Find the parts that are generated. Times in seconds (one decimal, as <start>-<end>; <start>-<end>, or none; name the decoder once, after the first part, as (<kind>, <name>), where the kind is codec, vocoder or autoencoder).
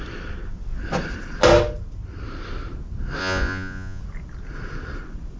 3.2-4.0 (vocoder, Vocos)